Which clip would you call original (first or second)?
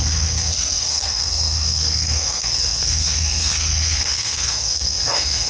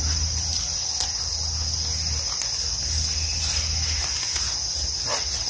second